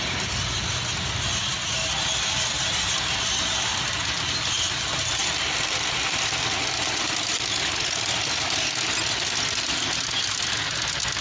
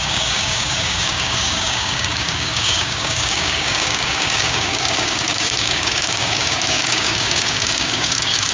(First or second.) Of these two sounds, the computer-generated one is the second